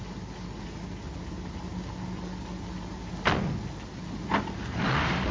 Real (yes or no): yes